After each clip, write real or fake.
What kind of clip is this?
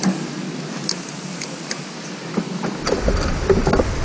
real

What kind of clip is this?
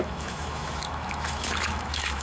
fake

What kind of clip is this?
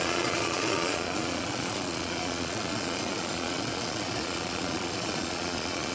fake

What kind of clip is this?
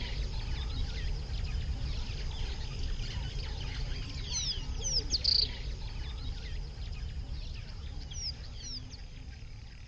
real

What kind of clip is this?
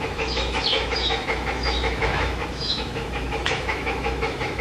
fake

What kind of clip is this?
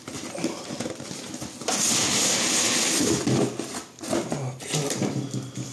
real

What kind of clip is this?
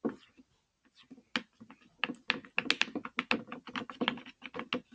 real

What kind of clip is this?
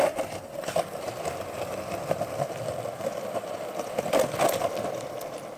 fake